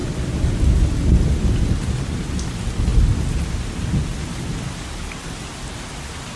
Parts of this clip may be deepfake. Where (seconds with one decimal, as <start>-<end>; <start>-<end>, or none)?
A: none